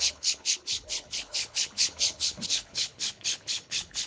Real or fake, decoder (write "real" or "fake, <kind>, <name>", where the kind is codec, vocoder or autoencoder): fake, codec, HILCodec